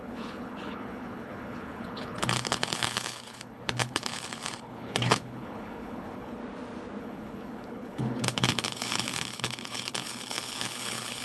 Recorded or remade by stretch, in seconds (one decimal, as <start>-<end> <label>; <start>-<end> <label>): 0.0-6.4 remade; 6.4-7.0 recorded; 7.0-11.2 remade